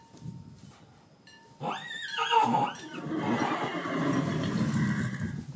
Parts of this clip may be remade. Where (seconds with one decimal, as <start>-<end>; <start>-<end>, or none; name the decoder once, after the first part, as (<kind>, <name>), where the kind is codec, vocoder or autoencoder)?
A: none